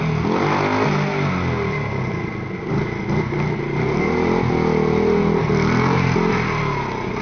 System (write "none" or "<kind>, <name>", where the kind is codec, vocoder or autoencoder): none